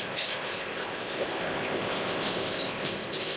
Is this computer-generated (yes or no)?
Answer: yes